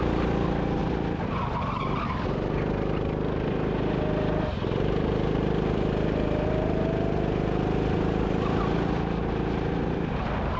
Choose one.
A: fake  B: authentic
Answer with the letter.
B